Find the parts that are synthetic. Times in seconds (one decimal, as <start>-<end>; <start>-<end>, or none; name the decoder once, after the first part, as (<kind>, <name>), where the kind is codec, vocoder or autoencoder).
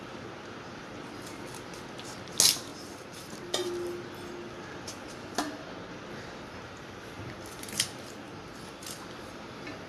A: none